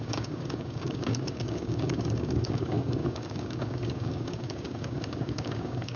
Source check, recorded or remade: remade